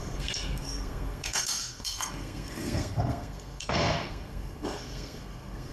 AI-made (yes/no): yes